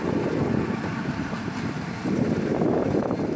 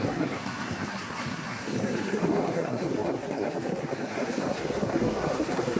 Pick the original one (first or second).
first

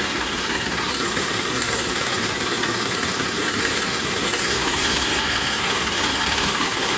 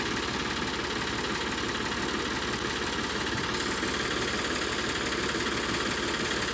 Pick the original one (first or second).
second